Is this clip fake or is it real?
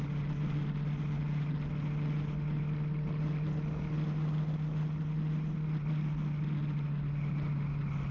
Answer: real